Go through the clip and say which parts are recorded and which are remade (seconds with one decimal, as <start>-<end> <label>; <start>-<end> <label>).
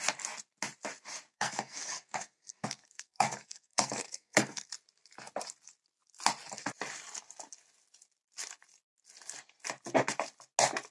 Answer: 0.0-1.3 recorded; 1.3-4.7 remade; 4.7-10.9 recorded